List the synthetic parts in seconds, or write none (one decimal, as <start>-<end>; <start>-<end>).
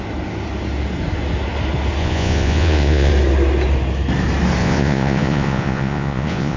2.0-3.1; 4.6-6.6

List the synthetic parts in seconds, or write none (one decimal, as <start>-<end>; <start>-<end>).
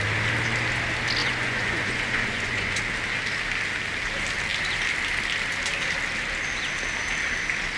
1.2-2.8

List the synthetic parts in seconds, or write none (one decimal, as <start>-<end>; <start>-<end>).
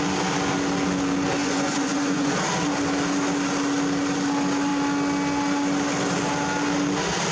1.4-2.3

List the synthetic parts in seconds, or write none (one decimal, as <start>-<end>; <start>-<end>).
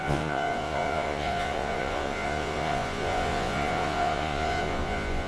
0.0-5.3